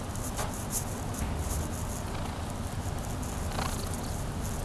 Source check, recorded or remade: recorded